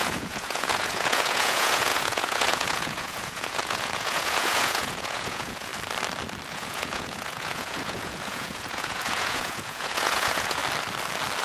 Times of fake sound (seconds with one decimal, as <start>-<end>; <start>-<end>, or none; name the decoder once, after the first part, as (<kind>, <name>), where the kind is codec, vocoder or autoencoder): 0.0-5.7 (vocoder, Vocos); 6.5-10.6